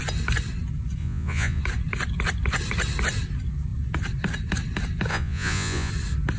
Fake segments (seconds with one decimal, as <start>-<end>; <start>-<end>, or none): 1.0-1.6; 5.1-5.9